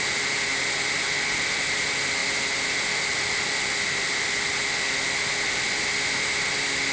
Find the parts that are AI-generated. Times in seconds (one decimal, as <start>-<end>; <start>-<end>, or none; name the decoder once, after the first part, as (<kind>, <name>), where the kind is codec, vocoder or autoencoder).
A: none